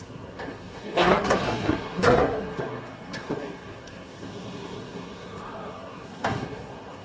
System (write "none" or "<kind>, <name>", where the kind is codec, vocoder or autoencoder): codec, SNAC